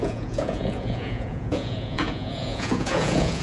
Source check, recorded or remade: remade